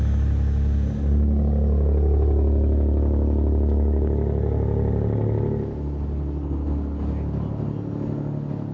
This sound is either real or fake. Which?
real